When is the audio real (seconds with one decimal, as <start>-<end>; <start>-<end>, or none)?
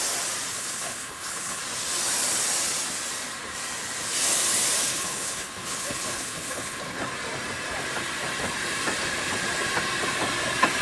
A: 0.0-0.5; 1.6-4.9; 7.0-10.8